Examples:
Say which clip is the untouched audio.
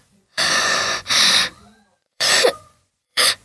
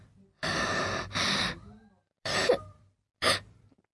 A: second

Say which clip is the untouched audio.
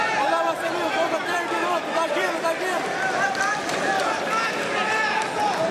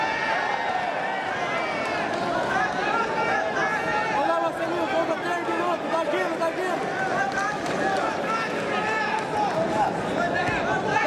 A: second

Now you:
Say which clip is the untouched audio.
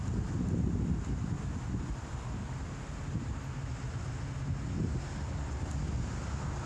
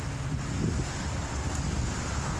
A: first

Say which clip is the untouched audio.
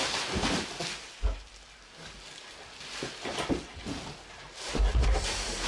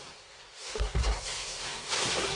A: first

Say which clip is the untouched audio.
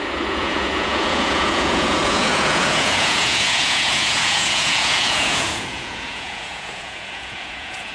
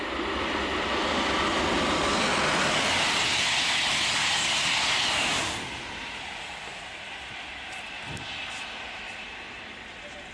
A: second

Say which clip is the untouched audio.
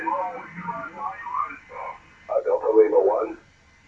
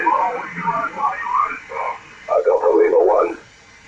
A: first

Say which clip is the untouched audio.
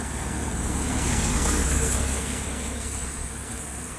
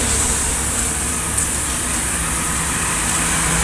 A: second